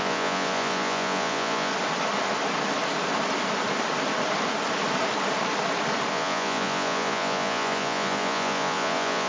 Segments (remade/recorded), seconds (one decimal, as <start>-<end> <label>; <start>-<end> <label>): 0.0-1.7 remade; 1.7-6.1 recorded; 6.1-9.3 remade